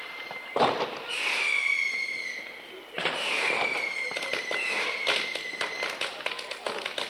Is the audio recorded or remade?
recorded